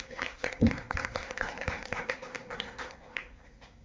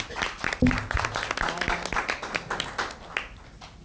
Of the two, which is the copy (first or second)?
first